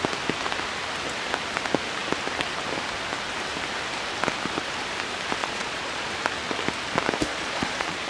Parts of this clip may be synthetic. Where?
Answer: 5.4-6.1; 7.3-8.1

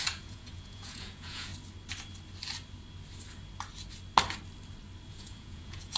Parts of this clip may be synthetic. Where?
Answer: 0.0-1.5; 5.1-6.0

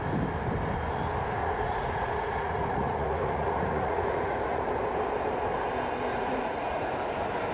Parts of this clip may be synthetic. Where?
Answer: 1.4-4.7; 6.1-6.9